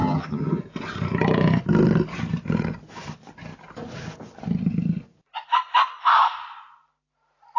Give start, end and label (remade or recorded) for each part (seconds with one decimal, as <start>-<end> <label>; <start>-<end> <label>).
0.0-0.6 remade; 0.6-7.6 recorded